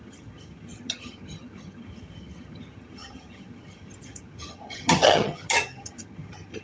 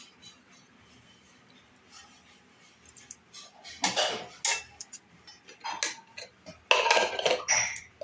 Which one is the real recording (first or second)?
second